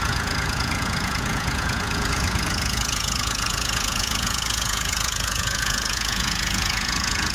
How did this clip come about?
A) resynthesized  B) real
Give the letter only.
A